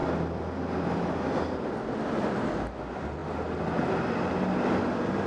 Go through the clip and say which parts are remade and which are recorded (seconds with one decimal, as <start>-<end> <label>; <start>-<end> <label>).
0.0-5.3 recorded